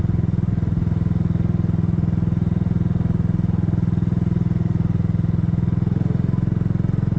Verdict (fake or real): real